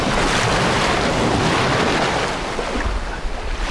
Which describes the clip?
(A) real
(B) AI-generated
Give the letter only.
A